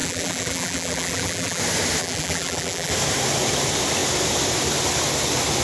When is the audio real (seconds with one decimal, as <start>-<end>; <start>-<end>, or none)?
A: 1.6-2.0; 2.9-5.6